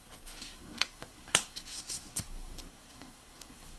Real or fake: fake